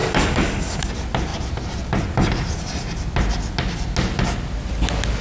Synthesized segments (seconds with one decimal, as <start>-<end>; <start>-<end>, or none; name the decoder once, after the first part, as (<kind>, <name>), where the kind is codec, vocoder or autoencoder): 0.0-0.9 (codec, DAC)